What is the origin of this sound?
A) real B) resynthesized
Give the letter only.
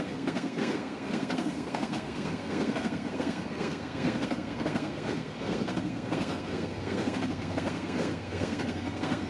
B